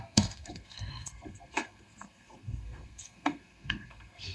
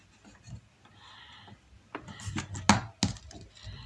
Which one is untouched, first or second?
second